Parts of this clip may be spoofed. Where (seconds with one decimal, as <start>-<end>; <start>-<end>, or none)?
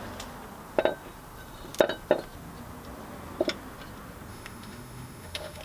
4.3-5.6